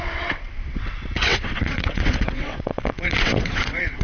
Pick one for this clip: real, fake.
fake